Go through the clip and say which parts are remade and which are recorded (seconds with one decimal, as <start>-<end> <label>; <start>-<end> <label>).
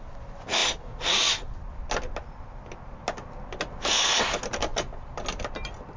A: 0.0-6.0 recorded